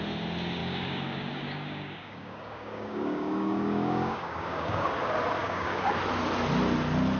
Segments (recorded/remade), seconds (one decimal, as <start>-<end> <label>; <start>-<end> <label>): 0.0-0.6 recorded; 0.6-4.9 remade; 4.9-5.4 recorded; 5.4-5.9 remade; 5.9-7.2 recorded